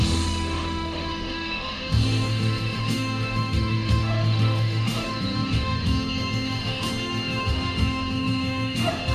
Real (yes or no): no